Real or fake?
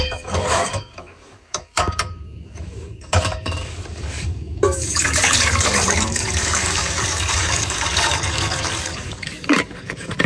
fake